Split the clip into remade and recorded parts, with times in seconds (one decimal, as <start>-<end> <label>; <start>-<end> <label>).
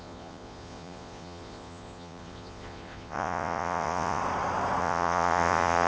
0.0-4.2 remade; 4.2-4.8 recorded; 4.8-5.9 remade